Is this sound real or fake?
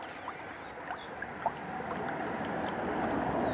real